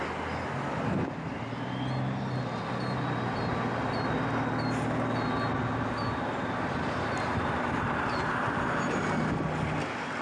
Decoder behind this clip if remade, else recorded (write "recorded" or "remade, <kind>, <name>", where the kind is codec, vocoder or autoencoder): recorded